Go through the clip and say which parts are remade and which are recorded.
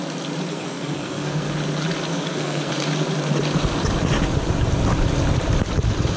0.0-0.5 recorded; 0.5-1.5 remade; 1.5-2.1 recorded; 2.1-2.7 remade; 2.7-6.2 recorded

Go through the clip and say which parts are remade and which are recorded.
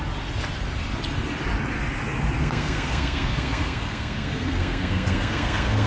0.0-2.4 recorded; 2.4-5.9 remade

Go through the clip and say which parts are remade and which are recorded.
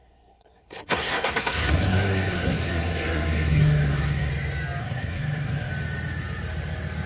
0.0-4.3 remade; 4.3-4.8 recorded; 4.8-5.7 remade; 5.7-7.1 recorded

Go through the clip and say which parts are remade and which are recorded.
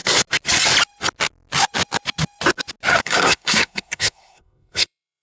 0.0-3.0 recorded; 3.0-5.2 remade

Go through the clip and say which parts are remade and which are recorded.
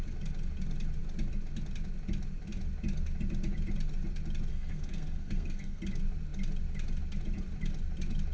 0.0-4.5 recorded; 4.5-5.8 remade; 5.8-8.3 recorded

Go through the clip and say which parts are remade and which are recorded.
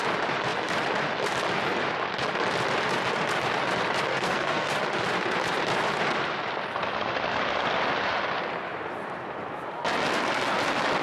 0.0-4.1 recorded; 4.1-4.7 remade; 4.7-11.0 recorded